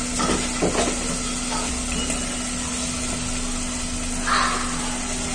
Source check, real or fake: real